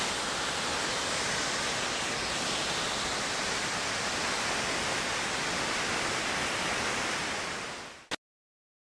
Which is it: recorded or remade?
recorded